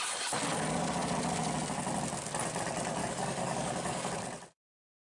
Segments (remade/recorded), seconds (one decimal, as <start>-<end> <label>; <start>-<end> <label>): 0.0-3.0 recorded; 3.0-4.1 remade; 4.1-5.1 recorded